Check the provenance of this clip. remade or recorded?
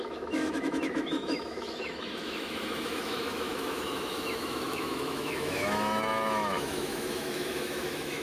remade